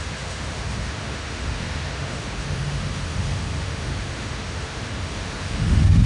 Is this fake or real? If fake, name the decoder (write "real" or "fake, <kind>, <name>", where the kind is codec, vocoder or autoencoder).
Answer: fake, autoencoder, DAC-VAE